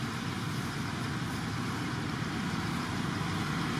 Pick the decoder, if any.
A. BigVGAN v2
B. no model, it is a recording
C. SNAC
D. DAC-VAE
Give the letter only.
B